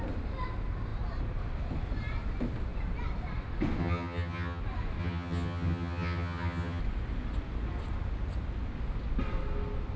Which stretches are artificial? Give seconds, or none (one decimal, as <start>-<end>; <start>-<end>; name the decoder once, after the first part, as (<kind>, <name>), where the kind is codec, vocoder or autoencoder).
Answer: 3.8-4.6 (vocoder, HiFi-GAN); 5.0-6.8